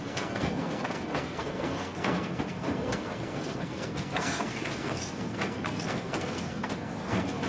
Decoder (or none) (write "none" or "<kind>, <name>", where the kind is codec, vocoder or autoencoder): codec, SNAC